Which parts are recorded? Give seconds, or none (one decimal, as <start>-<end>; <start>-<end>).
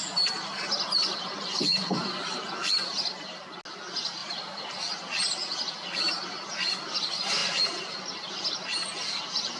0.0-9.6